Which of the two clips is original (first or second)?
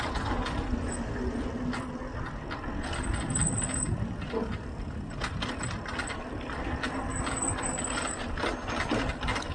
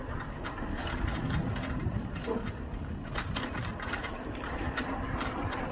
first